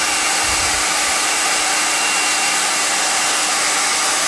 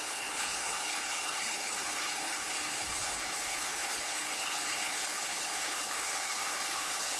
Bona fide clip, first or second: first